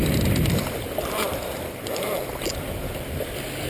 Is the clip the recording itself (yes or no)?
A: yes